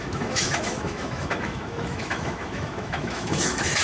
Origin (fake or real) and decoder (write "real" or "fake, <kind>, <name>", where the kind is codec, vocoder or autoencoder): fake, autoencoder, DAC-VAE